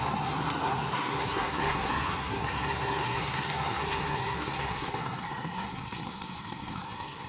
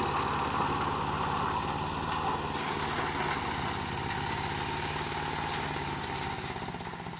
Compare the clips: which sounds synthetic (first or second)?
first